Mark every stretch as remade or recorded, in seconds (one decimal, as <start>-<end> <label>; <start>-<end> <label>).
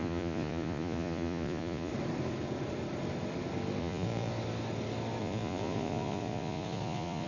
0.0-1.9 remade; 1.9-3.8 recorded; 3.8-4.3 remade; 4.3-5.2 recorded; 5.2-7.3 remade